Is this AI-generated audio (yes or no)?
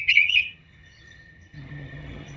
yes